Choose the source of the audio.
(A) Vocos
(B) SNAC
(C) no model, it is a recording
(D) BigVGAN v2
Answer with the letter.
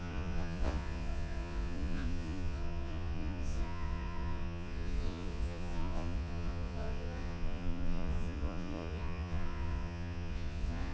A